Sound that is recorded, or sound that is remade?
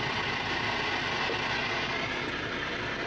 recorded